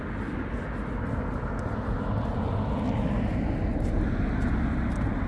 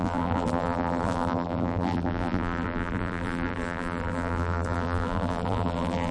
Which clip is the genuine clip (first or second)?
first